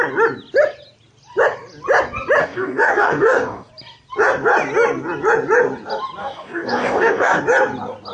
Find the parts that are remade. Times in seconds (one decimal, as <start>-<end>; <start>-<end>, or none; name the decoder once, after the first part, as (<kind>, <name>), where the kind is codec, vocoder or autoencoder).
2.4-3.7 (codec, DAC); 6.2-7.4